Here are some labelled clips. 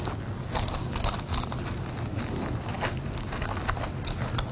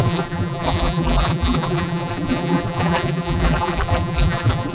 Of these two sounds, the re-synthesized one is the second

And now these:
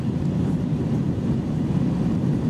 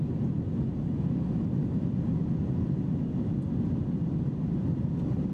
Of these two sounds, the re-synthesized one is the first